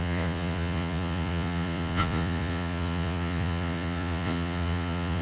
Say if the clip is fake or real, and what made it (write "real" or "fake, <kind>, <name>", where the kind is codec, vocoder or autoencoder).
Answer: fake, vocoder, Vocos